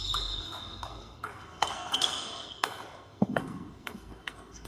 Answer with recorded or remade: remade